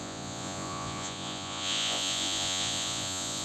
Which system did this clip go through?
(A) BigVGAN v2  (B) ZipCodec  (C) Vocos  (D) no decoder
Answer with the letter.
C